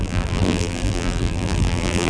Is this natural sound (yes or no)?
no